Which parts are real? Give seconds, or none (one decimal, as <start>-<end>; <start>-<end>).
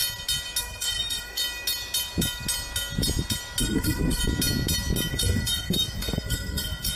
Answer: 0.0-0.6; 1.4-3.6; 4.2-5.1